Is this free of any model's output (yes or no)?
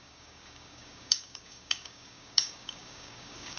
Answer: no